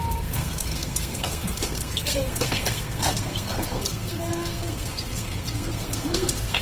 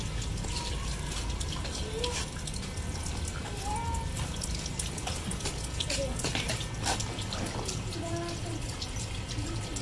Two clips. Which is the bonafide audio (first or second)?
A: second